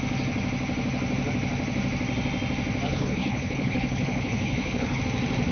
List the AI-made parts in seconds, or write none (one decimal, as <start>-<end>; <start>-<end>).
2.9-5.0